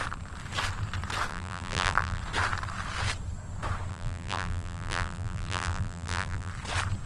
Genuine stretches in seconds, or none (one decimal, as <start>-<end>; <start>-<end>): 0.0-1.3; 2.2-3.9; 6.5-7.1